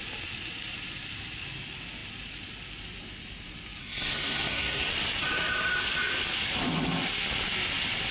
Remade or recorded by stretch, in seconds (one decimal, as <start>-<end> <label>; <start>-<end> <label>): 0.0-3.8 recorded; 3.8-4.9 remade; 4.9-8.1 recorded